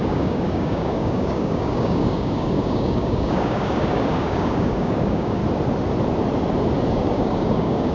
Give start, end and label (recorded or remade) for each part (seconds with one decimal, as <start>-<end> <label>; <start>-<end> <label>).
0.0-5.4 remade; 5.4-6.9 recorded; 6.9-7.9 remade